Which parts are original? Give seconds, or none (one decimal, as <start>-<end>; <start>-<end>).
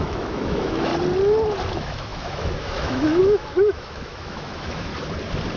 0.9-1.7; 4.9-5.6